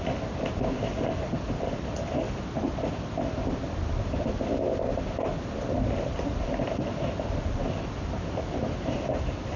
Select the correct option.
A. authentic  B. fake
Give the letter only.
A